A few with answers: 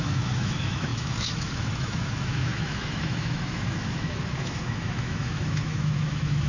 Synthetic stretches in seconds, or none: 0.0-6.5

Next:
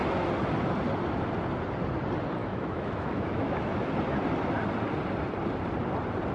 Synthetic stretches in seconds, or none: 2.4-3.9

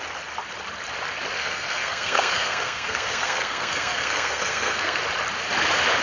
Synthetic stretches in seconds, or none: 1.4-5.0

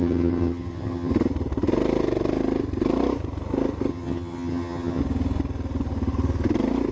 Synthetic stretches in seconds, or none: 0.0-1.1; 3.9-5.0

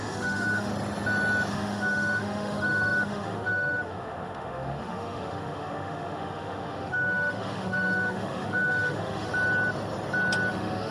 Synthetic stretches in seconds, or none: 0.0-0.7; 1.5-9.3; 10.5-10.9

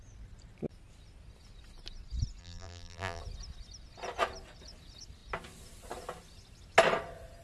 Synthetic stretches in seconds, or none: 2.4-3.2

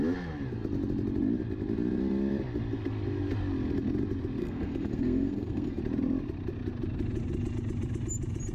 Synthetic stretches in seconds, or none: 4.4-5.8

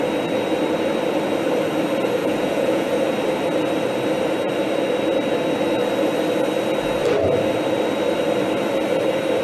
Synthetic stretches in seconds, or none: 2.2-2.9